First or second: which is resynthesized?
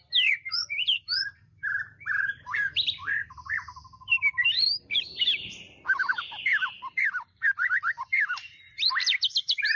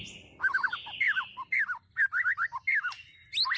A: first